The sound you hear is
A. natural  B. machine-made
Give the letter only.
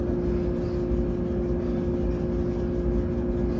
A